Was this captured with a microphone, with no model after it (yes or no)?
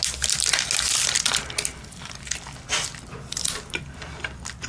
yes